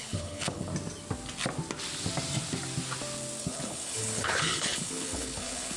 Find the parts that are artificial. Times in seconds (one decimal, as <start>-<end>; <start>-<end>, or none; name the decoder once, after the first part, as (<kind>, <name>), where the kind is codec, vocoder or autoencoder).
0.0-0.7 (codec, HILCodec); 3.4-5.8